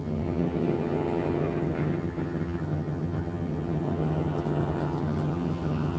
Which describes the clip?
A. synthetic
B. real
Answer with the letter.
A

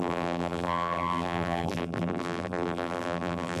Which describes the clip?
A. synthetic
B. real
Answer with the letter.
A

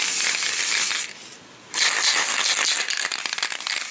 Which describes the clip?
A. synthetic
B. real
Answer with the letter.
B